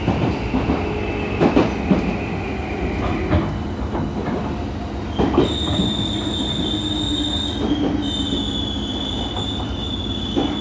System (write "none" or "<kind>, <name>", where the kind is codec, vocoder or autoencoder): none